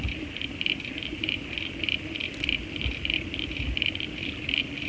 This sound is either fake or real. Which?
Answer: real